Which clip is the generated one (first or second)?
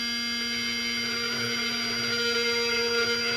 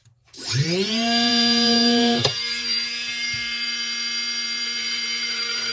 second